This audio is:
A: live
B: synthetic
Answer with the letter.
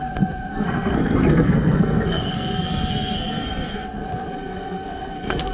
B